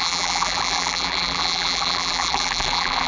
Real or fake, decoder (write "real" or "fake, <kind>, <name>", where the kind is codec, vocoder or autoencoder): fake, vocoder, BigVGAN v2